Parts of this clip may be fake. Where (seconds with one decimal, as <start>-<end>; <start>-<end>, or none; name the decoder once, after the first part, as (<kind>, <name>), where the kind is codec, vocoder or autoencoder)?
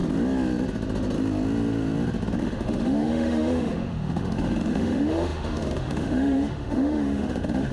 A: 2.4-7.7 (autoencoder, DAC-VAE)